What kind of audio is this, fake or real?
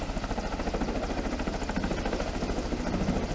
real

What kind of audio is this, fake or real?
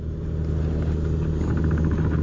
real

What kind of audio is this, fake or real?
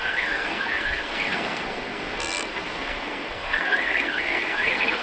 fake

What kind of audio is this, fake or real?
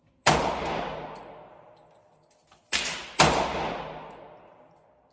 real